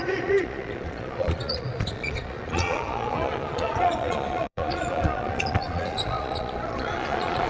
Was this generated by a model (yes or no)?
yes